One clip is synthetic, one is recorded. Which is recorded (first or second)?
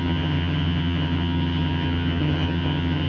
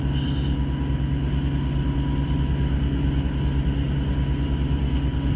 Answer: second